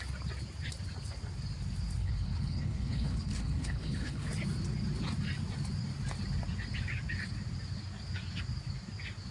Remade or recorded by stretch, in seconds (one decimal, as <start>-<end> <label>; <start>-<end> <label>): 0.0-2.0 recorded; 2.0-4.3 remade; 4.3-9.3 recorded